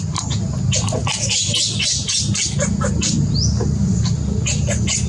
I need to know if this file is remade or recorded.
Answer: recorded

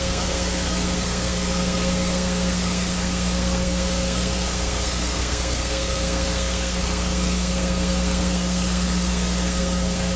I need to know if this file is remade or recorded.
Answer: remade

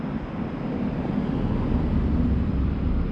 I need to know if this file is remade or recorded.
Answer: recorded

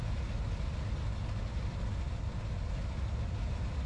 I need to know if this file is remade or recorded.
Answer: recorded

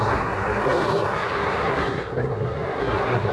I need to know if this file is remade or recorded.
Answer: remade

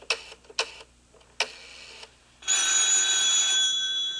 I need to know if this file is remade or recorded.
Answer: recorded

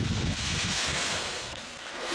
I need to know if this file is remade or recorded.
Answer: remade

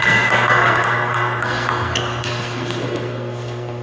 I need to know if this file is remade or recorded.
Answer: remade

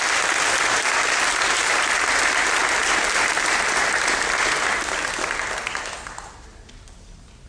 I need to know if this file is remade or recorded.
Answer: recorded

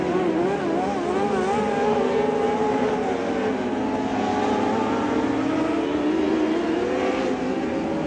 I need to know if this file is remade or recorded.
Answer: recorded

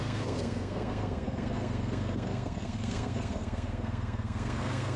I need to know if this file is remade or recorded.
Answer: remade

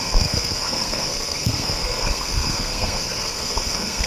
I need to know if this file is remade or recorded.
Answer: remade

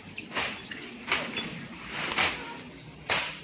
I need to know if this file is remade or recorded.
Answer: recorded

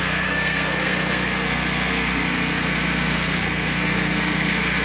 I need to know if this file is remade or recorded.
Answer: remade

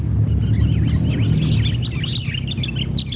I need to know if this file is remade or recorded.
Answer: recorded